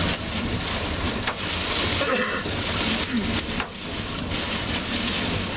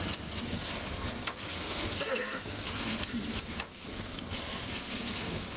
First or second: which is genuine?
first